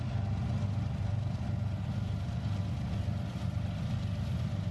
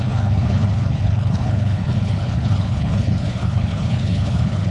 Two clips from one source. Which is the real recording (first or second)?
first